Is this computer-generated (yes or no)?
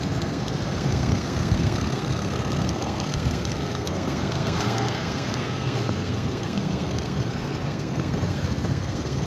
yes